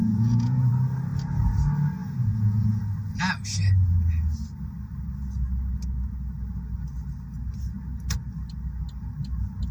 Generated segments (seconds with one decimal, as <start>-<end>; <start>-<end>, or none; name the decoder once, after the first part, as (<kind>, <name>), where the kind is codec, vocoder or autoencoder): 0.0-0.7 (vocoder, Vocos); 2.0-2.8